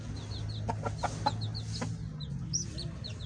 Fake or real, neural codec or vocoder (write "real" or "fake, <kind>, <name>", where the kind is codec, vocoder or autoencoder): real